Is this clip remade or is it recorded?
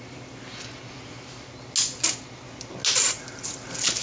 recorded